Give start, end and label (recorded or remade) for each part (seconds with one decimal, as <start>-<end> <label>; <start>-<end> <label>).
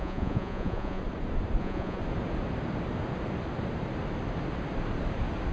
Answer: 0.0-1.0 remade; 1.0-1.6 recorded; 1.6-2.0 remade; 2.0-5.5 recorded